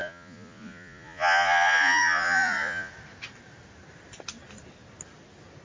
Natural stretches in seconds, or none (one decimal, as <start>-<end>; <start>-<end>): 2.9-5.6